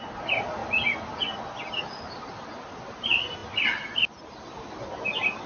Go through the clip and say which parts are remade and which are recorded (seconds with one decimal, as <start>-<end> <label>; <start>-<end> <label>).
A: 0.0-5.5 recorded